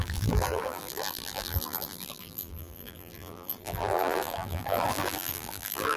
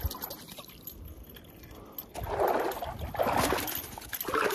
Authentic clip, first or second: second